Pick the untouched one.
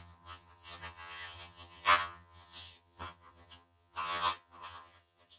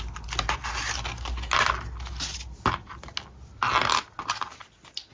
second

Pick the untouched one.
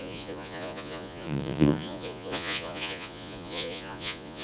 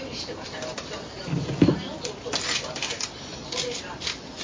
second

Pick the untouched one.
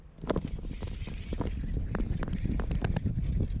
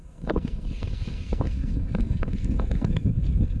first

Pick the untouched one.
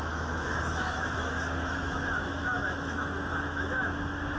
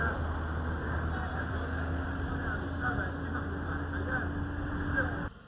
second